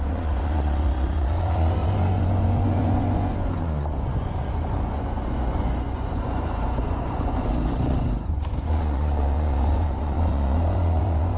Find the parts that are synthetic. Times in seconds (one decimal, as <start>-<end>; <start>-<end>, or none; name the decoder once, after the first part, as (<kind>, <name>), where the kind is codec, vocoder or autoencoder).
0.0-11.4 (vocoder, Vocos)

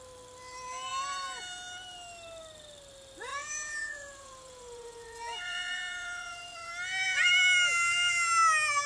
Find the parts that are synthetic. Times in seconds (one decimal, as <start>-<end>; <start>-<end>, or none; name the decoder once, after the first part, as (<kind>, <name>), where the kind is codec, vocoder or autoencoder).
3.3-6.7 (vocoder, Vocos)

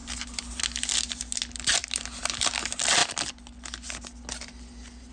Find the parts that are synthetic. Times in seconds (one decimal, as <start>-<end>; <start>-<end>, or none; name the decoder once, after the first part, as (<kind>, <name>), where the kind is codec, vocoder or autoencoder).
none

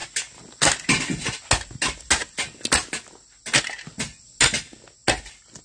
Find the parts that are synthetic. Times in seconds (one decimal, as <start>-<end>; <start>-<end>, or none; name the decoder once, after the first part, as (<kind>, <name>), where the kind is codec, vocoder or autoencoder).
none